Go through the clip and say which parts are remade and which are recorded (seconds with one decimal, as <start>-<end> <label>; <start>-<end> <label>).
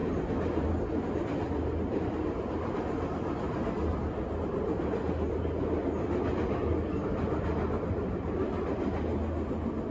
0.0-9.9 recorded